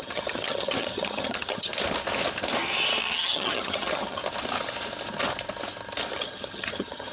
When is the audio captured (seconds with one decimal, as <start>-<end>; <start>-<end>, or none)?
1.7-3.0; 4.2-6.1